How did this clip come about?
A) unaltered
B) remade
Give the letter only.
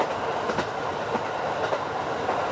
A